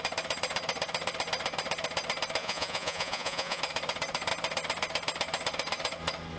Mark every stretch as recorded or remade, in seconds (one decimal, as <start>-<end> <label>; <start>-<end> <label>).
0.0-2.4 recorded; 2.4-3.6 remade; 3.6-6.4 recorded